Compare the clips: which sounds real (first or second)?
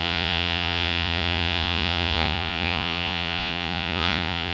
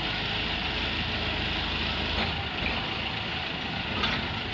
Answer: second